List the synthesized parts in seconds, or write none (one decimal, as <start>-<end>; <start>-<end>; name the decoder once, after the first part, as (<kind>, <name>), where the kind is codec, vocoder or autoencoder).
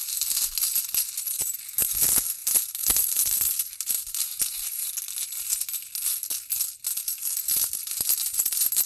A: 2.4-4.9 (vocoder, BigVGAN v2)